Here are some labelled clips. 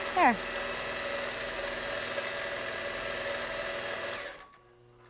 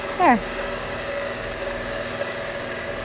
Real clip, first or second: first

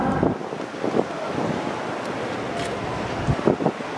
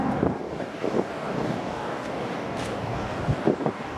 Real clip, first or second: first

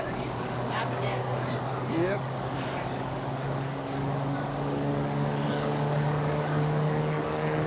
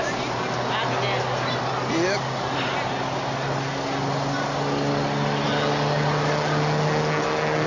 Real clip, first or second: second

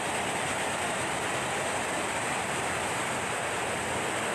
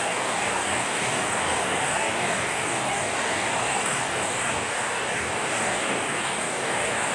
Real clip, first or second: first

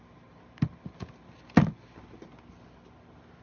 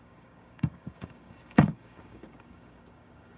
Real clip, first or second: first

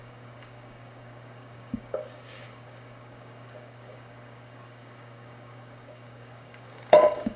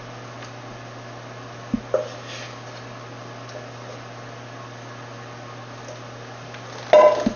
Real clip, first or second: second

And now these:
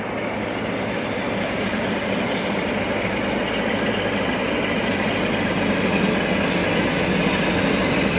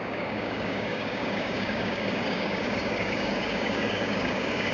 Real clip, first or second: first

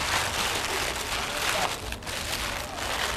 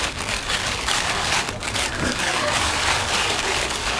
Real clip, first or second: first